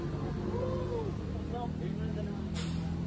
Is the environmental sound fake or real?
real